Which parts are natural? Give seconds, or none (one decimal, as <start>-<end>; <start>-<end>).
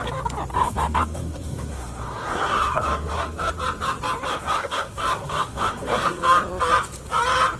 0.0-0.5; 3.5-4.3; 6.2-7.6